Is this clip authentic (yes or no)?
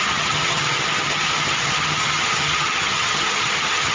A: no